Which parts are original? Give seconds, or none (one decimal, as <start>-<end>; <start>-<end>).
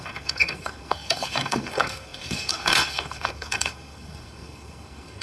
none